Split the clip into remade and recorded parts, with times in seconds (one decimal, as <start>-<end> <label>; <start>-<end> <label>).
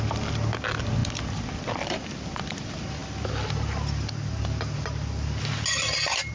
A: 0.0-6.3 recorded